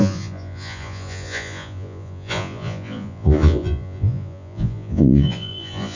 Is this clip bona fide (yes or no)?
no